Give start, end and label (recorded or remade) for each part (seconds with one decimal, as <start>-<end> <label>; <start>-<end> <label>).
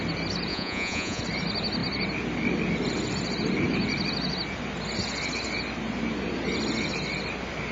0.0-0.5 recorded; 0.5-1.2 remade; 1.2-7.7 recorded